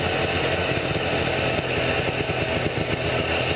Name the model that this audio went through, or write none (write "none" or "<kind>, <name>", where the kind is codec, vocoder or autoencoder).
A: none